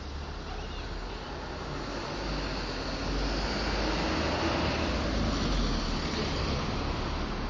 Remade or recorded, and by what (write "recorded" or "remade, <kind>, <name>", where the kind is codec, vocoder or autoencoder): recorded